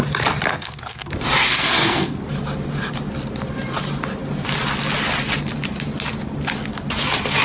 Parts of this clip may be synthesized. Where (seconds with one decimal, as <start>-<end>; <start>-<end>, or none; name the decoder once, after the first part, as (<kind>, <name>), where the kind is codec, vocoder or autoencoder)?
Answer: 0.5-1.1 (codec, SNAC); 1.5-2.2